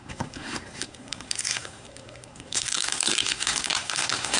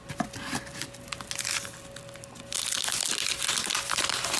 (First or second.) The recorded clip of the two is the second